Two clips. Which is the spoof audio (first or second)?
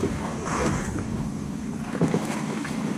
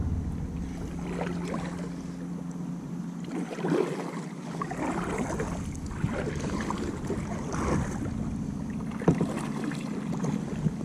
first